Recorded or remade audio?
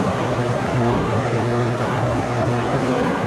remade